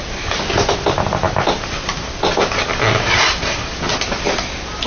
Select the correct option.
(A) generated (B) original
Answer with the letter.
B